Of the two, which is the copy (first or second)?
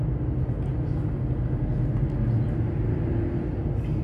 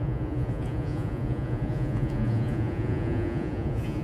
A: second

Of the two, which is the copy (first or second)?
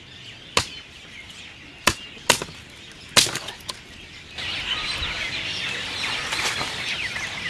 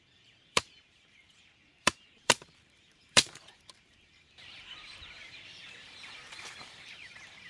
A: second